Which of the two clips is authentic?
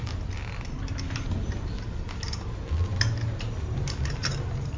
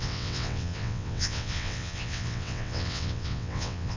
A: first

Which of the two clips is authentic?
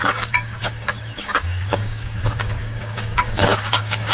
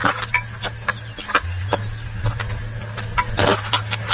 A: second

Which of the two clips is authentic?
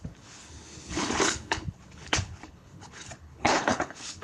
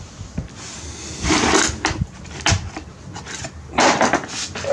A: second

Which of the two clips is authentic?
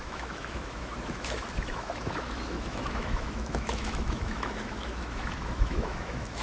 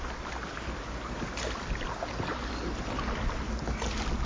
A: second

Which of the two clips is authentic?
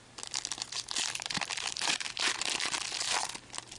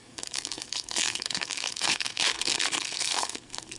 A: first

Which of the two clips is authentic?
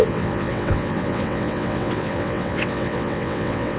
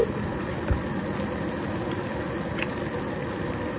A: second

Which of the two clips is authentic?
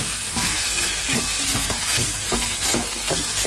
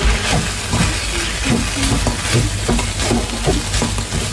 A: second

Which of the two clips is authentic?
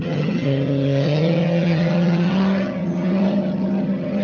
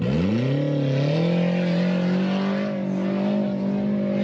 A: second